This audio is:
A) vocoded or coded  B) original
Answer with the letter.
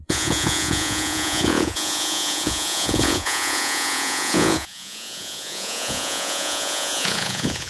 A